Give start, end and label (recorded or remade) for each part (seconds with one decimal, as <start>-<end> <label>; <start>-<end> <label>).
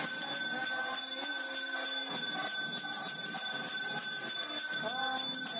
0.0-5.6 recorded